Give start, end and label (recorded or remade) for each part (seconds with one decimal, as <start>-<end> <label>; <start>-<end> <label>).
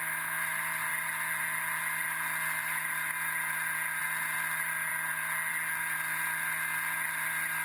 0.0-7.6 recorded